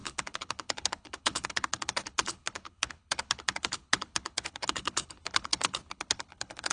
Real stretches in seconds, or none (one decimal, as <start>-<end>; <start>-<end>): none